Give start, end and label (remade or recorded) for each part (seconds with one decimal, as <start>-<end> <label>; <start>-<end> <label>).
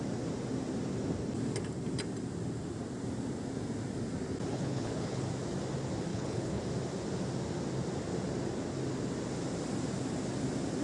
0.0-4.5 recorded; 4.5-5.3 remade; 5.3-6.1 recorded; 6.1-6.6 remade; 6.6-10.8 recorded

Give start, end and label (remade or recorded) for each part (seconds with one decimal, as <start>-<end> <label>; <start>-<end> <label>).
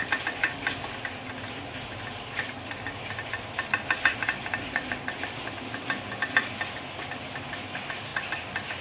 0.0-8.8 recorded